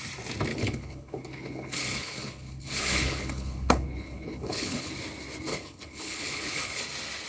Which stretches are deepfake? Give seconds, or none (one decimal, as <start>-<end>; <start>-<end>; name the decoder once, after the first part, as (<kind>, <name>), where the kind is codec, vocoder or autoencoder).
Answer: 0.5-4.9 (codec, HILCodec); 5.5-6.8